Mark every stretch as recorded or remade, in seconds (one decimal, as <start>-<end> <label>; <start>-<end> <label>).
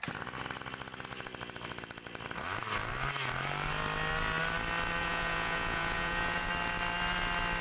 0.0-5.0 recorded; 5.0-6.5 remade; 6.5-7.6 recorded